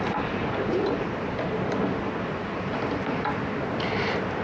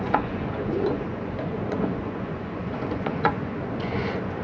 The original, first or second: first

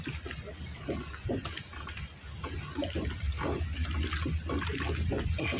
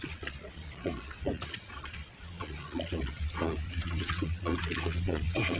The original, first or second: first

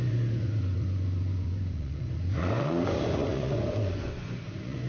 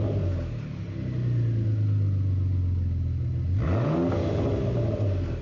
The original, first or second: second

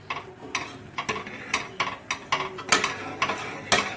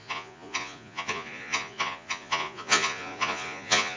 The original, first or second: first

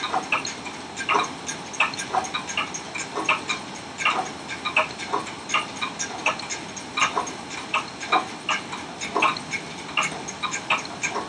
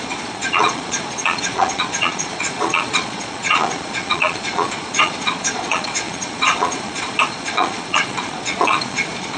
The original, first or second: first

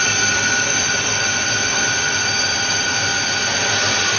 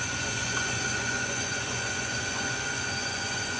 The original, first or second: first